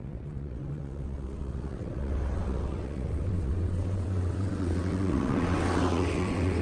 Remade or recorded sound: remade